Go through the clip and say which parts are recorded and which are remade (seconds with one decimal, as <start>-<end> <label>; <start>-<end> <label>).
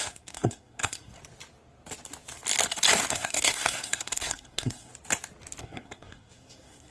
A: 0.0-1.2 remade; 1.2-3.1 recorded; 3.1-4.9 remade; 4.9-5.6 recorded; 5.6-6.9 remade